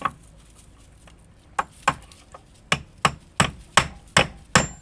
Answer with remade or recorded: recorded